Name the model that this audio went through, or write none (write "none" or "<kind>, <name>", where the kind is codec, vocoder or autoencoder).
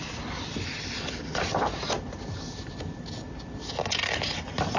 none